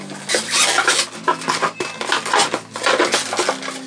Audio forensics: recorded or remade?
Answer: recorded